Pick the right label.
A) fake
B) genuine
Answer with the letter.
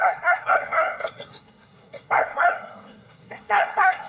A